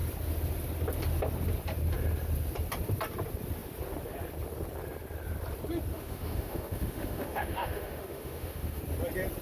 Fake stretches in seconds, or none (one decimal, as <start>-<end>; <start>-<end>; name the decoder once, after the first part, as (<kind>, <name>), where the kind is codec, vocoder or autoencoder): 5.9-8.8 (autoencoder, DAC-VAE)